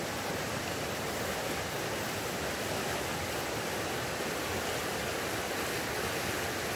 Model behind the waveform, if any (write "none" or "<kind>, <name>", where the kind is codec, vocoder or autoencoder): none